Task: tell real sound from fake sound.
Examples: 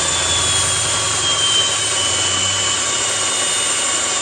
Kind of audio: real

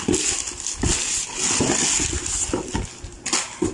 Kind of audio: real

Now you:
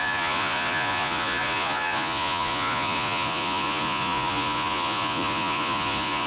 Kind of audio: fake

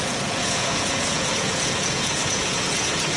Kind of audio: fake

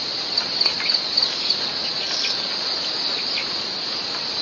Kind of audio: real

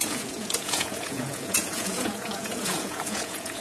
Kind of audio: fake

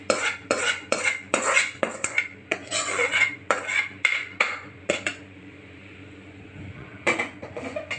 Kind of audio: fake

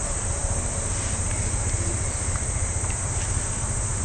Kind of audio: real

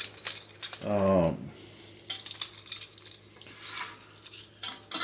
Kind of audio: real